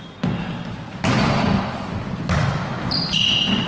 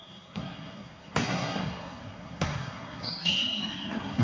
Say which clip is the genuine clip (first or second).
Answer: first